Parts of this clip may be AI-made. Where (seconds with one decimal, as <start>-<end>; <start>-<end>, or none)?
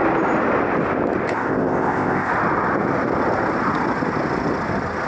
1.3-2.3